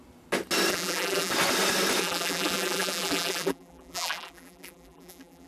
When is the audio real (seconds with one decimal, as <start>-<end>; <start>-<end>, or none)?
0.0-0.7; 1.3-2.0